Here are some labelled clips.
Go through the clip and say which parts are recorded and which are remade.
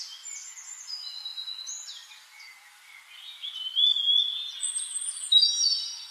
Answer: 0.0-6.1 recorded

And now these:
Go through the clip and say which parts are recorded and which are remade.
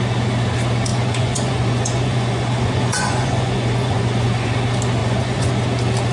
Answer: 0.0-0.9 recorded; 0.9-4.6 remade; 4.6-5.0 recorded; 5.0-5.5 remade; 5.5-6.1 recorded